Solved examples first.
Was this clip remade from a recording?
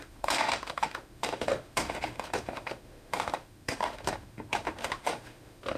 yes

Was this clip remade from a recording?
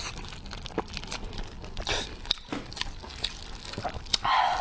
no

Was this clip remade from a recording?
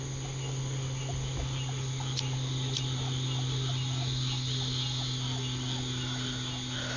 no